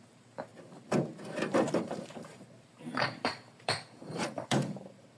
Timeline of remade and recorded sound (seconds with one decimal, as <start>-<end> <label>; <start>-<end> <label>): 0.0-0.5 remade; 0.5-1.7 recorded; 1.7-5.2 remade